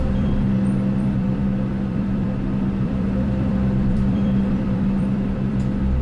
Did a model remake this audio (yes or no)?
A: yes